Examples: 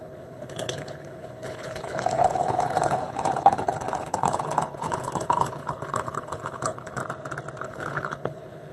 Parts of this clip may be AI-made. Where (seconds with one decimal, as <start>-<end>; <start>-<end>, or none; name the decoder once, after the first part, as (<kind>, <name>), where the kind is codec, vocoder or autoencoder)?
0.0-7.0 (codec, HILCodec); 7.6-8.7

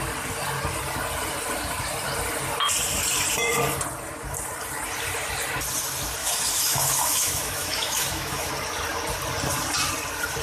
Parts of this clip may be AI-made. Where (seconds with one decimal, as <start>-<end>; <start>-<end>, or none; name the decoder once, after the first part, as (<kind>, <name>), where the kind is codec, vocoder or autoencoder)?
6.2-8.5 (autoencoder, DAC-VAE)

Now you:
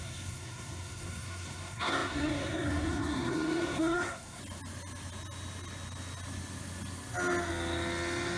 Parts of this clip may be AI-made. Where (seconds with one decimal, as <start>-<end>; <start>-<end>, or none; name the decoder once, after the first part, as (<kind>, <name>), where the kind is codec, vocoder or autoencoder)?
0.0-4.4 (codec, SNAC)

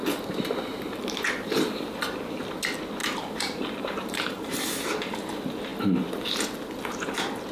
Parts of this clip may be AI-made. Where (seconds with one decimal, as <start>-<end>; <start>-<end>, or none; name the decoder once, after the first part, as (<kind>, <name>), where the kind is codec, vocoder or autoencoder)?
0.0-1.3 (vocoder, BigVGAN v2); 3.0-5.3

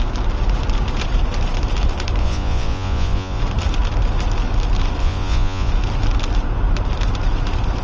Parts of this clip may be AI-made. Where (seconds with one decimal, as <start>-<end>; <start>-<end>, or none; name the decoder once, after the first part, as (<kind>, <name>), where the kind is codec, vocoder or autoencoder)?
2.2-3.4 (vocoder, Vocos); 5.0-5.7

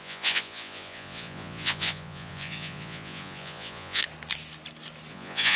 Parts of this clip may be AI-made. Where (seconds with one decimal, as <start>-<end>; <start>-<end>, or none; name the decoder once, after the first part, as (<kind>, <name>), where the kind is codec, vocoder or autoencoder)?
0.0-4.0 (vocoder, Vocos); 5.1-5.6